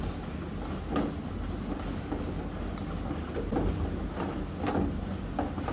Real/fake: real